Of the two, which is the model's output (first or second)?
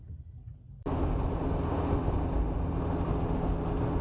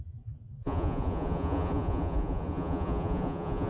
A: second